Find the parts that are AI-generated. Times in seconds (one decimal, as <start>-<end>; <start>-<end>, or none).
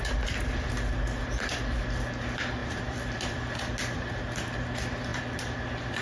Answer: 0.0-0.7; 2.6-3.4; 5.1-6.0